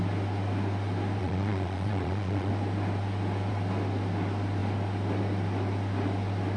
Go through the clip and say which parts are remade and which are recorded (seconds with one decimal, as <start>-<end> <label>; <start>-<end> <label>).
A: 0.0-1.2 recorded; 1.2-2.5 remade; 2.5-6.6 recorded